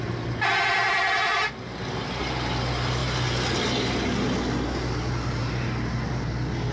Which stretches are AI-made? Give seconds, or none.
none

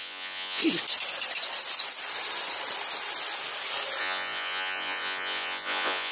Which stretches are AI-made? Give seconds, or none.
0.0-0.6; 4.0-6.1

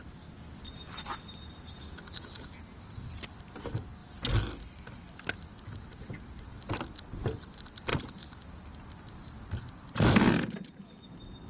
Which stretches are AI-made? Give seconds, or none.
none

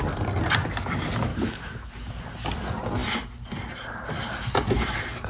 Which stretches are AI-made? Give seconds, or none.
1.3-1.9